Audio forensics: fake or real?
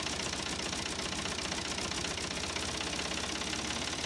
real